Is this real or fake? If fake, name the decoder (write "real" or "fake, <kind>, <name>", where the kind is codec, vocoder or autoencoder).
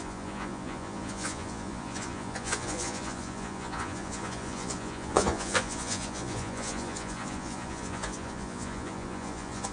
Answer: fake, vocoder, Vocos